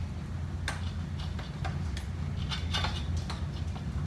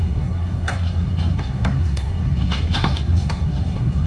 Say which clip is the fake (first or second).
second